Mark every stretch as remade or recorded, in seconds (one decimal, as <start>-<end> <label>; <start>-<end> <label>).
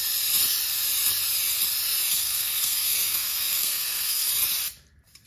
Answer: 0.0-2.1 recorded; 2.1-4.3 remade; 4.3-5.3 recorded